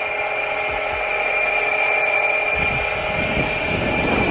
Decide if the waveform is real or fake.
real